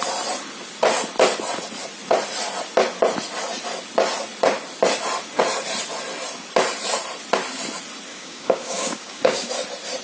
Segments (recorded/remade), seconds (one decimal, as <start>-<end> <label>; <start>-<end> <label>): 0.0-8.1 recorded; 8.1-9.5 remade; 9.5-10.0 recorded